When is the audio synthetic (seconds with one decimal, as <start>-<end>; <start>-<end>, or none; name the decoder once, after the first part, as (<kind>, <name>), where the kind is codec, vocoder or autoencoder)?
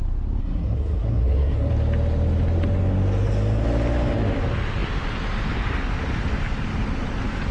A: 0.4-1.7 (codec, SNAC)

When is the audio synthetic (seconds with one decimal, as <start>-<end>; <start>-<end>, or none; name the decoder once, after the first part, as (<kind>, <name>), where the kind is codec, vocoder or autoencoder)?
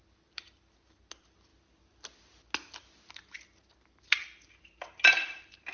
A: none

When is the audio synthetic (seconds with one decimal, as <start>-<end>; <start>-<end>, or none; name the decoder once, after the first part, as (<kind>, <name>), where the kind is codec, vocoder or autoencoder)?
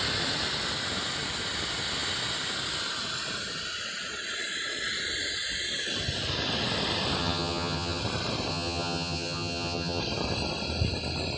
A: 7.2-8.0 (vocoder, HiFi-GAN); 8.5-10.0